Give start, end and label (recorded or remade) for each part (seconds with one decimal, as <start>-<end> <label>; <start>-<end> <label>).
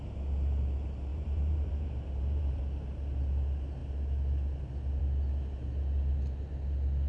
0.0-1.1 recorded; 1.1-2.6 remade; 2.6-7.1 recorded